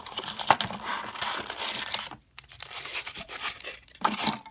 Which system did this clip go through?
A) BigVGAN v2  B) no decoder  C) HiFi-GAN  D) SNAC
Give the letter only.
A